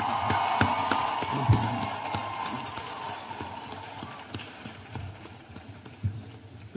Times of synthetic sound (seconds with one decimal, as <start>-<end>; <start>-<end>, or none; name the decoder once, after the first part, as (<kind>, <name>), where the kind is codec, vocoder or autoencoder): 2.2-6.2 (vocoder, BigVGAN v2)